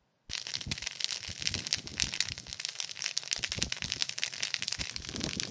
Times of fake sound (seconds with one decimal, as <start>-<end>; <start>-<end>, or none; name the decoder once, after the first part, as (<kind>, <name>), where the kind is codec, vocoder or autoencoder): none